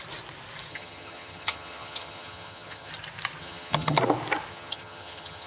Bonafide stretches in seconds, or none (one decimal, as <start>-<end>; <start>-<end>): 0.0-0.7; 2.9-3.4; 4.0-4.5